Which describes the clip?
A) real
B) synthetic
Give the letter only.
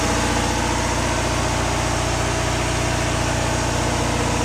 A